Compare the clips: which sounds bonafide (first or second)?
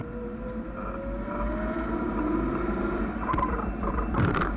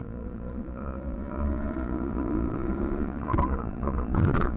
first